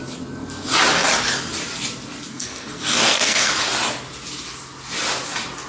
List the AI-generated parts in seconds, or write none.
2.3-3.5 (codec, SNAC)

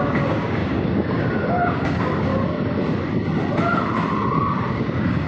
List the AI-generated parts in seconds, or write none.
0.0-2.3 (codec, DAC); 4.7-5.3

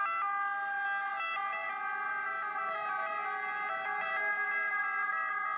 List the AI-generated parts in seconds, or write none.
none

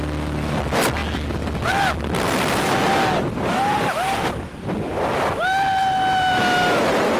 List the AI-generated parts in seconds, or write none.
none

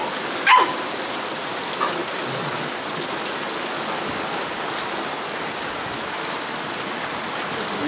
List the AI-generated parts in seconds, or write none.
none